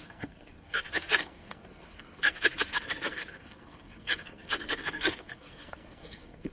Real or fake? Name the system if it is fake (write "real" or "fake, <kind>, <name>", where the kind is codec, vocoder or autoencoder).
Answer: fake, codec, SNAC